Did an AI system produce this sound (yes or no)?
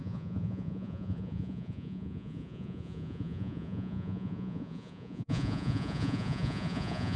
yes